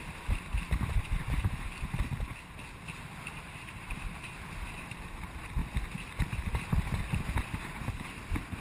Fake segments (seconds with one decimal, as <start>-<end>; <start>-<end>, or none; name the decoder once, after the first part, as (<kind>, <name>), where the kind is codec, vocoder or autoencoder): 0.0-1.7 (vocoder, BigVGAN v2); 3.3-5.6; 7.4-8.6